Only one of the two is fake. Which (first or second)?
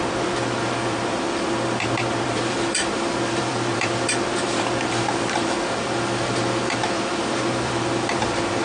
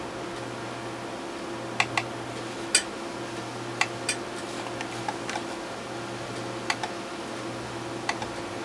first